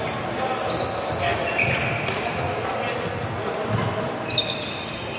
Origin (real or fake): real